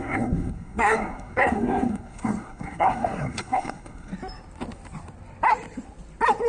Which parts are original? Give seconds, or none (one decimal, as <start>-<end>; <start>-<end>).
4.1-6.5